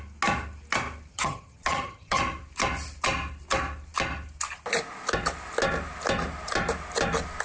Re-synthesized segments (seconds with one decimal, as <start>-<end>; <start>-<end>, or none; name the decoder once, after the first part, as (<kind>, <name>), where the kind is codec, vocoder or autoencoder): 1.1-2.2 (vocoder, HiFi-GAN)